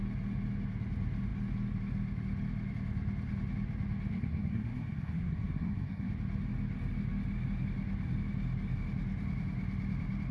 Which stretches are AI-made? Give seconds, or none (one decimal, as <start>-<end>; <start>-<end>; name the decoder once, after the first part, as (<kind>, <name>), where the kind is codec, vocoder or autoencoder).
4.1-6.1 (codec, SNAC)